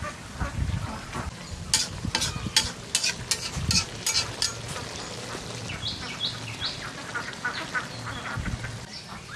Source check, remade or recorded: recorded